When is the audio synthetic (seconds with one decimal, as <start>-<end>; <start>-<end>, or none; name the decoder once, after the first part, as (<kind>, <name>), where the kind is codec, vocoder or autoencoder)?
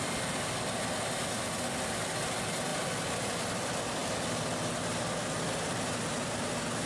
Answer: none